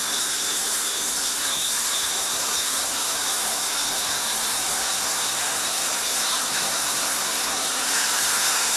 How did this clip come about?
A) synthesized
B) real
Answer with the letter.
A